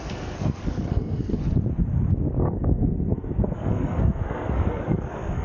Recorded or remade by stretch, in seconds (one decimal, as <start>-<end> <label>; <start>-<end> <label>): 0.0-1.4 remade; 1.4-2.4 recorded; 2.4-5.4 remade